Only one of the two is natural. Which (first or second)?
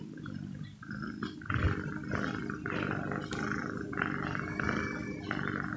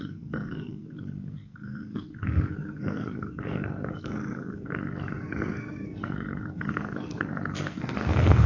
first